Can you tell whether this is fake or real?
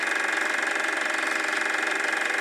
fake